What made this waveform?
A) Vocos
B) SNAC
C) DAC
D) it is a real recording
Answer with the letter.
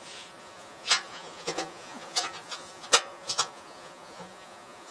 A